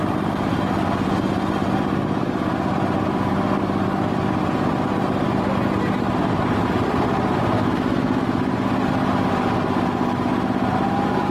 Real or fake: real